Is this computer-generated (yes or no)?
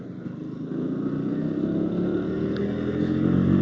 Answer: no